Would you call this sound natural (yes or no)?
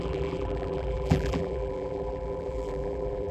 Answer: no